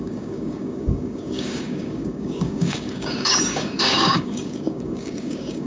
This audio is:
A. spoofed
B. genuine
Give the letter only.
A